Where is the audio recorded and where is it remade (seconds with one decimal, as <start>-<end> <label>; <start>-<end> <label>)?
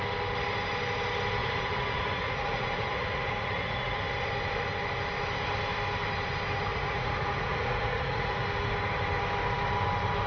0.0-1.4 recorded; 1.4-4.0 remade; 4.0-6.7 recorded; 6.7-8.4 remade; 8.4-10.3 recorded